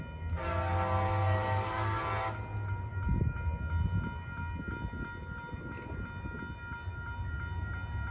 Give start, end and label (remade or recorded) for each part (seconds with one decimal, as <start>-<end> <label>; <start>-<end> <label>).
0.0-1.2 recorded; 1.2-2.0 remade; 2.0-8.1 recorded